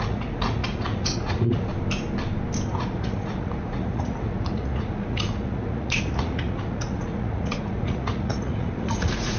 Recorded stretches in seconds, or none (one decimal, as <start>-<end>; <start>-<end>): 1.7-2.7